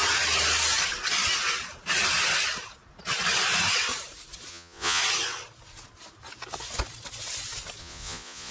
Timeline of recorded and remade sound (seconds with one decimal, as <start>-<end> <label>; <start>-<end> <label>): 0.0-4.5 recorded; 4.5-5.0 remade; 5.0-7.8 recorded; 7.8-8.5 remade